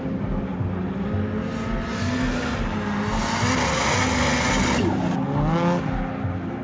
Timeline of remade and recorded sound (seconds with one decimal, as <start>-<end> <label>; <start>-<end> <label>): 0.0-6.6 recorded